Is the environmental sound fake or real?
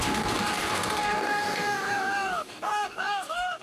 fake